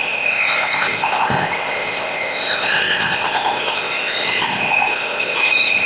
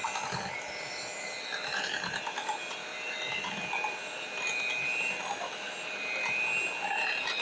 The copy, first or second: first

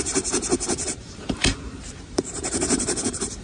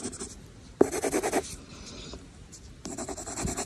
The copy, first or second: first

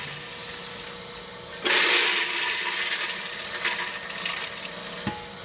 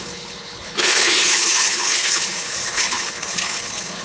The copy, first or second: second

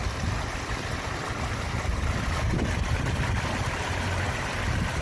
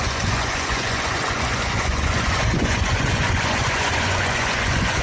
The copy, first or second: second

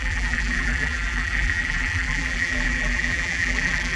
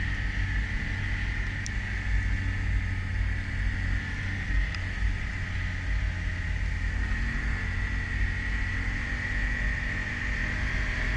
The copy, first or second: first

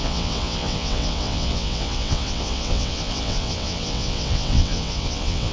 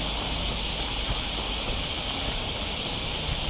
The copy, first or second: first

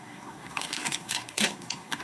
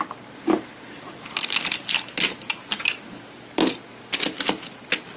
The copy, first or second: first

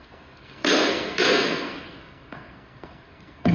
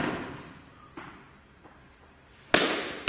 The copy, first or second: first